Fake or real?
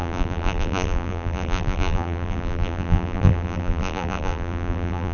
fake